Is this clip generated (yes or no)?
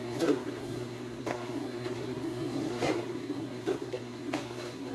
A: yes